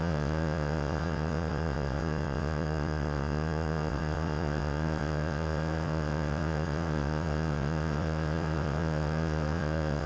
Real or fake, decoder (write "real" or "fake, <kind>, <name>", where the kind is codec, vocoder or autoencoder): fake, vocoder, WaveNeXt